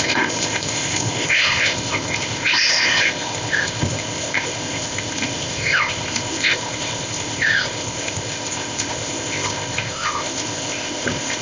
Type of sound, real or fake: fake